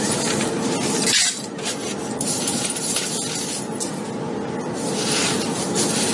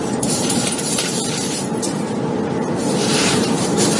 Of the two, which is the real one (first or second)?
first